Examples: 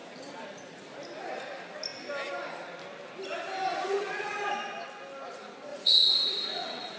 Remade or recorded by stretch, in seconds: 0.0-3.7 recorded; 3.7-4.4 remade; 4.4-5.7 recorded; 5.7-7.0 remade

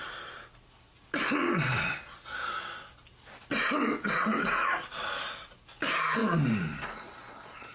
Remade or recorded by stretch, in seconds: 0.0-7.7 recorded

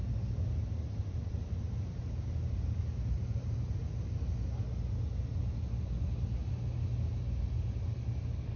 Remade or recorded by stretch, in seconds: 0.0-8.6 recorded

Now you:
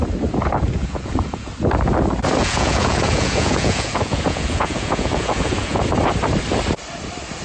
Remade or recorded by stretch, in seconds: 0.0-0.8 recorded; 0.8-1.5 remade; 1.5-2.4 recorded; 2.4-5.9 remade; 5.9-7.4 recorded

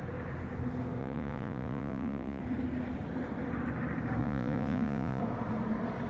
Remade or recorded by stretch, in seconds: 0.0-1.0 recorded; 1.0-2.4 remade; 2.4-4.2 recorded; 4.2-5.2 remade; 5.2-6.1 recorded